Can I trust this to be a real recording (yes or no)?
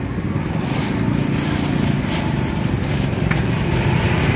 yes